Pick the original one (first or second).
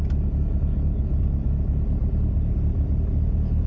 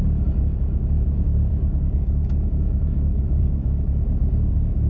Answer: first